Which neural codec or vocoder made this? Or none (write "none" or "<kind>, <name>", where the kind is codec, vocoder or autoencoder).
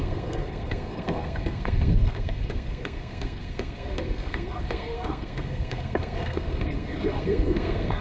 codec, SNAC